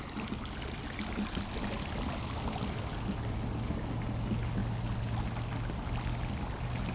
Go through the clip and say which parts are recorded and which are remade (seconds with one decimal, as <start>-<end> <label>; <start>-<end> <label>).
0.0-6.9 recorded